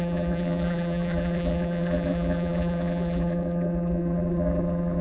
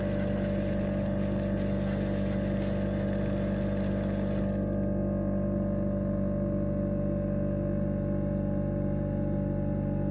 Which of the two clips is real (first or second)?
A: second